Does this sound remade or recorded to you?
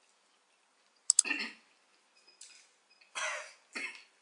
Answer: recorded